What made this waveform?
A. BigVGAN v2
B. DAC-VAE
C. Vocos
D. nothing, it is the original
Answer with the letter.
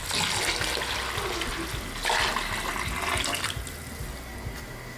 D